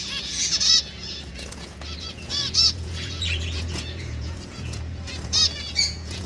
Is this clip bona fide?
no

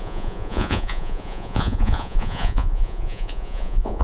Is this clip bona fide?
no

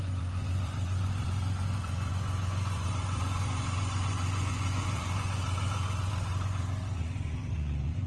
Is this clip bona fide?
no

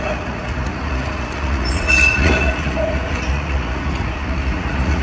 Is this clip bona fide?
no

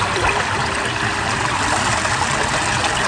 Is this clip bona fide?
yes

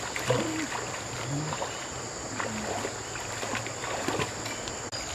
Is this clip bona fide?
yes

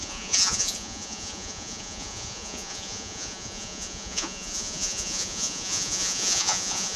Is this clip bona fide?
no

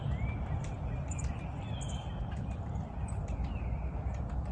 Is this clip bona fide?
yes